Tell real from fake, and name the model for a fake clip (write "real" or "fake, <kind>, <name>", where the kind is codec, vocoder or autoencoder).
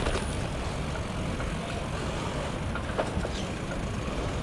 real